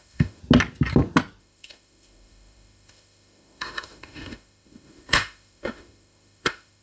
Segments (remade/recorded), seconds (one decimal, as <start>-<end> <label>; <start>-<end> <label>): 0.0-0.4 remade; 0.4-1.4 recorded; 1.4-6.8 remade